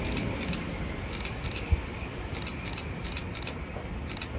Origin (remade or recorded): recorded